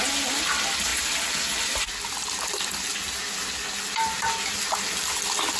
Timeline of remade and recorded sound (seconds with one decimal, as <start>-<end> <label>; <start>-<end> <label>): 0.0-5.6 recorded